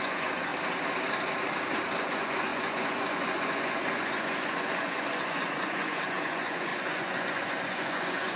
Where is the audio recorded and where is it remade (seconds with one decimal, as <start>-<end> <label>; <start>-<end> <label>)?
0.0-0.5 remade; 0.5-2.0 recorded; 2.0-8.4 remade